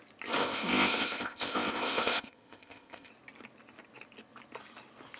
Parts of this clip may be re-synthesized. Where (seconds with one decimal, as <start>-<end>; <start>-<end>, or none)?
0.4-3.1